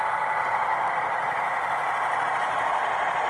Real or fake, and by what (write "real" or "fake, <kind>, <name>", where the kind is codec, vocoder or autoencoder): real